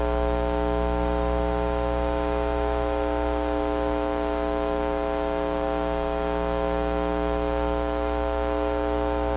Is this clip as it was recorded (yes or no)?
no